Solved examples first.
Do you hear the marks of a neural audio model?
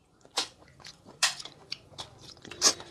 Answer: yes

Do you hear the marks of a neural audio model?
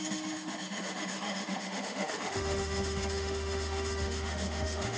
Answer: yes